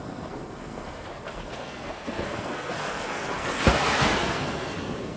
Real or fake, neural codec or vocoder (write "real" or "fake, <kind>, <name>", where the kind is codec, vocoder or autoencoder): fake, codec, SNAC